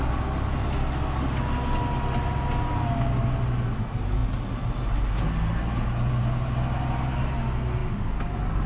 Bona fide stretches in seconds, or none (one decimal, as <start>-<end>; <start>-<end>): 0.0-8.7